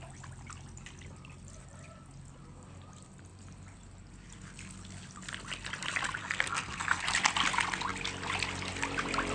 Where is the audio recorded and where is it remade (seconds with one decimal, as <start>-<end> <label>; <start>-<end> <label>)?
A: 0.0-6.2 recorded; 6.2-7.0 remade; 7.0-9.3 recorded